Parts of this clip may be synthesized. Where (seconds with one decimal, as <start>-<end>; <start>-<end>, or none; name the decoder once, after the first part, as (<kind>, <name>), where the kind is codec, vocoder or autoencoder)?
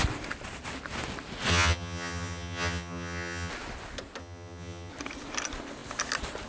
1.5-3.5 (vocoder, HiFi-GAN); 4.2-4.9